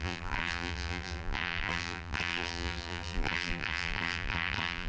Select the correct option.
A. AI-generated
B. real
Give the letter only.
A